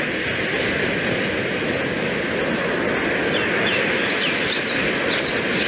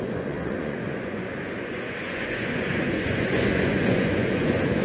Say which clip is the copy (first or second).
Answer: second